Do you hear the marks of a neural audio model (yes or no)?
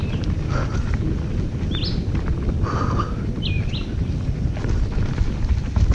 no